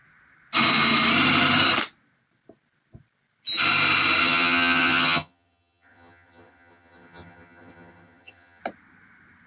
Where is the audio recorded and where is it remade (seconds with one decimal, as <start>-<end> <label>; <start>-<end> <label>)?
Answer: 0.0-4.2 recorded; 4.2-8.6 remade; 8.6-9.5 recorded

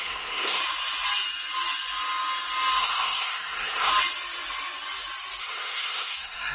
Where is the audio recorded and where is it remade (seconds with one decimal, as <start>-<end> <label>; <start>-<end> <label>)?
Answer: 0.0-0.6 remade; 0.6-2.8 recorded; 2.8-3.9 remade; 3.9-5.4 recorded; 5.4-6.5 remade

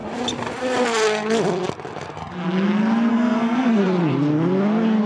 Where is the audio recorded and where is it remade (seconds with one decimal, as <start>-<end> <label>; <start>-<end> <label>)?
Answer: 0.0-3.1 recorded; 3.1-3.8 remade; 3.8-5.1 recorded